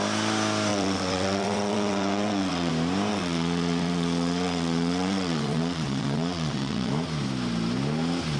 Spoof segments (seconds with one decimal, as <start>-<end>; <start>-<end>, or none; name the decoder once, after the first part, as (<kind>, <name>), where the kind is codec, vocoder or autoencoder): 0.7-2.7 (vocoder, WaveNeXt); 3.1-6.9